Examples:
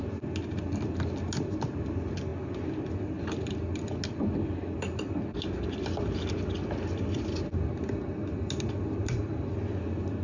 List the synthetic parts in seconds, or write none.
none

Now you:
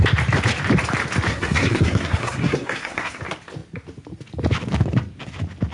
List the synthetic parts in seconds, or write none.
1.3-3.2 (codec, SNAC)

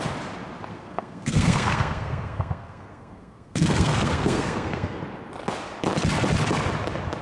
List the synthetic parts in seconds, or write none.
0.7-5.0 (codec, SNAC)

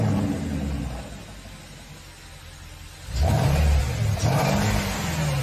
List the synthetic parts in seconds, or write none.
none

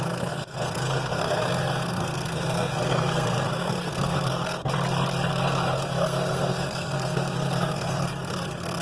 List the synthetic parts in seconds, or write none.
0.0-4.6 (codec, SNAC); 5.3-8.8

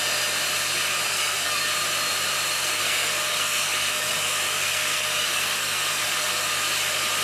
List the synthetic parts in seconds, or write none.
1.1-1.7 (codec, SNAC); 2.6-6.5

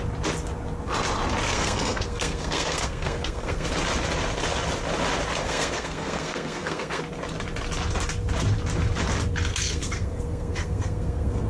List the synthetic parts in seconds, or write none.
1.5-3.7 (codec, SNAC); 5.4-7.0; 9.5-11.5